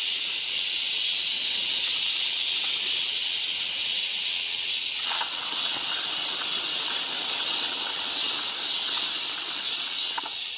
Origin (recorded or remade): remade